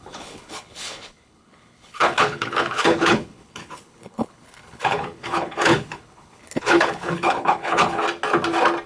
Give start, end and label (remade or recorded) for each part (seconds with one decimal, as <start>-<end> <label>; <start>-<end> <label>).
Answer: 0.0-8.0 remade; 8.0-8.9 recorded